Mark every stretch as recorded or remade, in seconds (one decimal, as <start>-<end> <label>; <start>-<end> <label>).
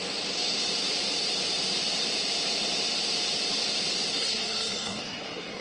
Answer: 0.0-4.1 recorded; 4.1-5.6 remade